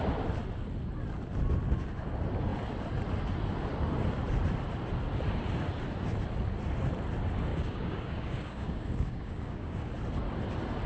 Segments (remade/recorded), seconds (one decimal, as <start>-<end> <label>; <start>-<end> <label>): 0.0-7.5 recorded; 7.5-9.9 remade; 9.9-10.9 recorded